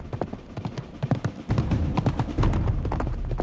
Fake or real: real